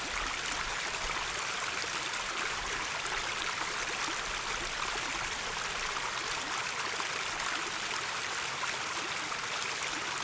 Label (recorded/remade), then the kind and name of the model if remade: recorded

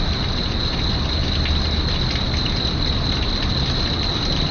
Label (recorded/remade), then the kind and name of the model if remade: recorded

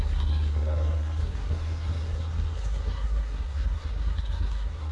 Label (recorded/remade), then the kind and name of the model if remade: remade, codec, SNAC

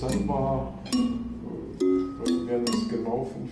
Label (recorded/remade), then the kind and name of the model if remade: recorded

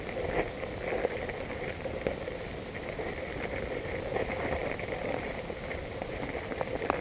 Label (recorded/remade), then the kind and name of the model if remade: recorded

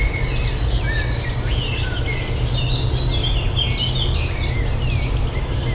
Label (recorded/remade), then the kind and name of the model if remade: recorded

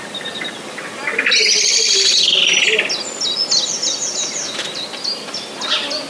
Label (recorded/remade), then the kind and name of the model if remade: recorded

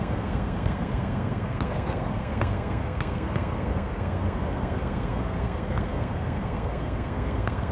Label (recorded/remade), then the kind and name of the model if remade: remade, codec, SNAC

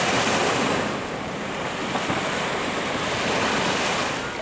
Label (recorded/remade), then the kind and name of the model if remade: recorded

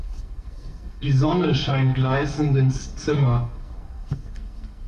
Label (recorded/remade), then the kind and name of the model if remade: remade, codec, SNAC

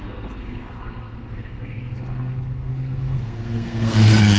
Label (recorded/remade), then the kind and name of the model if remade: remade, codec, SNAC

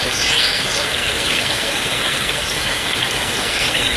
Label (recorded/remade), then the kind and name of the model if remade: remade, codec, SNAC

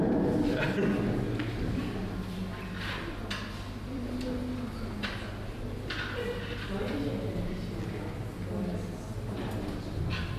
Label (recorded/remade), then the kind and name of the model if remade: recorded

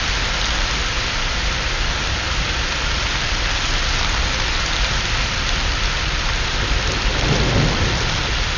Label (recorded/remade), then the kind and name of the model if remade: recorded